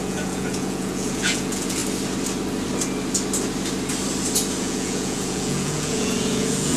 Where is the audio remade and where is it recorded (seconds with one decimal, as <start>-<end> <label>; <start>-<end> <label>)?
0.0-1.8 remade; 1.8-4.6 recorded; 4.6-6.8 remade